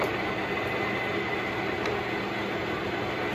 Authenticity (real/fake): fake